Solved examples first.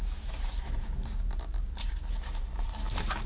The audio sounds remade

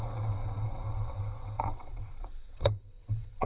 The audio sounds remade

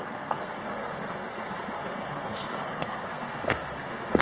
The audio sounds remade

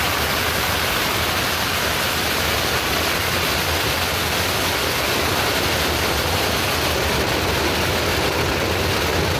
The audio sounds recorded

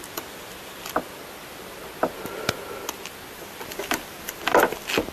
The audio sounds recorded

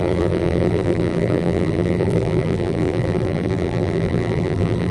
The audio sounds remade